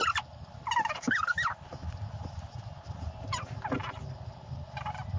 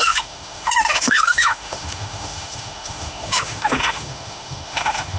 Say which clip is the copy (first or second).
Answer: second